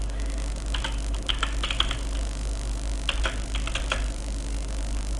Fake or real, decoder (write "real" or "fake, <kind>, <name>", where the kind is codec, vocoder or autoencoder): real